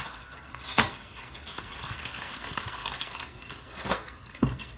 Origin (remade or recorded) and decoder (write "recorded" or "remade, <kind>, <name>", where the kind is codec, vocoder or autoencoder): remade, codec, SNAC